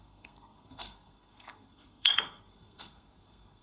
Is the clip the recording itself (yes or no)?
no